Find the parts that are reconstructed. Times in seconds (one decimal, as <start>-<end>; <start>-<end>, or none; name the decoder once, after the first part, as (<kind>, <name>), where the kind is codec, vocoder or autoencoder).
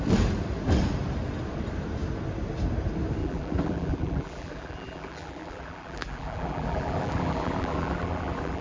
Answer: 3.2-8.6 (vocoder, BigVGAN v2)